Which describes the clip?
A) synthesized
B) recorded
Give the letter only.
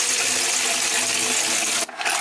B